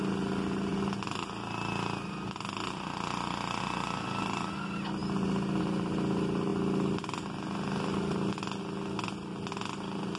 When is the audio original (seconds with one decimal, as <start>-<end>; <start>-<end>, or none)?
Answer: 0.0-10.2